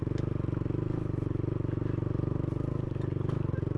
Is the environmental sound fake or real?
real